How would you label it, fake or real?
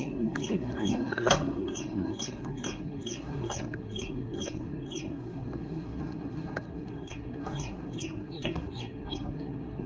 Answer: fake